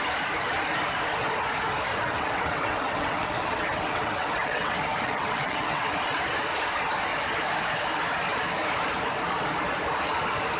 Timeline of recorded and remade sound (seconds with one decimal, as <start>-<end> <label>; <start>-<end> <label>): 0.0-1.9 recorded; 1.9-5.9 remade; 5.9-10.6 recorded